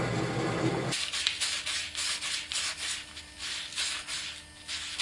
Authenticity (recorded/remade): recorded